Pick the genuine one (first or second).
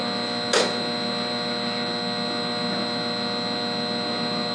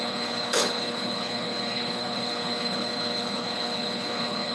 first